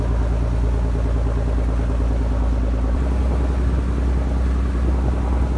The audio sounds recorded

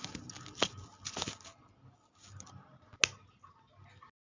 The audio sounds recorded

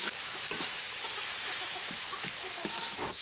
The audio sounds remade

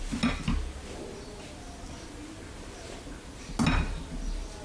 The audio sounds recorded